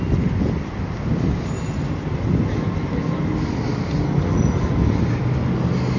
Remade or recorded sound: recorded